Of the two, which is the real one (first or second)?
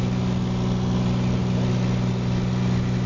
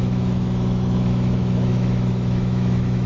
first